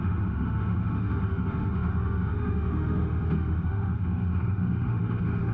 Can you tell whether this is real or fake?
fake